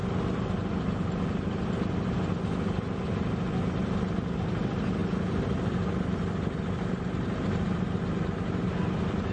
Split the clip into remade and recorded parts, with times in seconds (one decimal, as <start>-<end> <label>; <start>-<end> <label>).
0.0-9.3 recorded